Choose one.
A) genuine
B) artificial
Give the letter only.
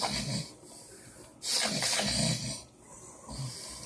A